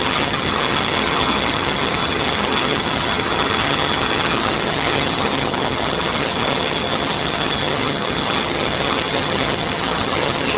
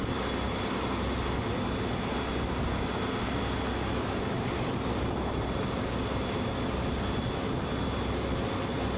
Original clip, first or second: second